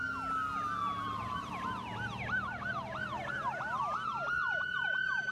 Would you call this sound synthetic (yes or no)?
no